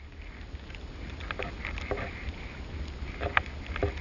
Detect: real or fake real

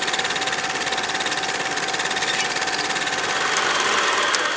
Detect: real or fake real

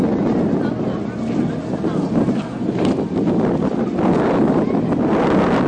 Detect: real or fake real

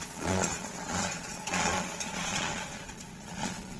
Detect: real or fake fake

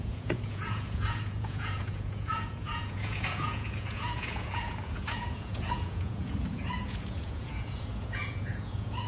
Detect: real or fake fake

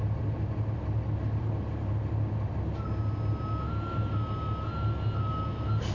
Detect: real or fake real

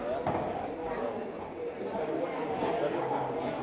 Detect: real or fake real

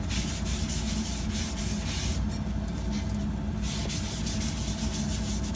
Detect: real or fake real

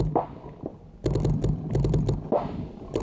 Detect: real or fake real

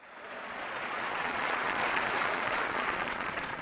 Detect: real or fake fake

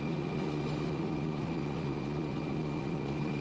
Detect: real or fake fake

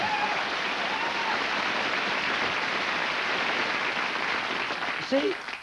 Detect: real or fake real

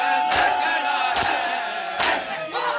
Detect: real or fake real